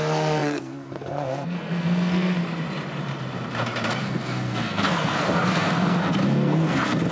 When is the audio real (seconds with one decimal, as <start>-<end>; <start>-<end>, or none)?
2.4-4.0